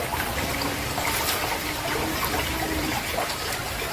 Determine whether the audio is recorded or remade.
recorded